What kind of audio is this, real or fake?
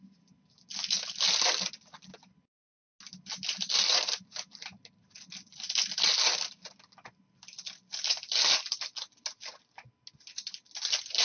real